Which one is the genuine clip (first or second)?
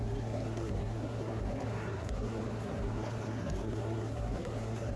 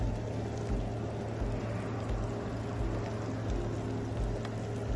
second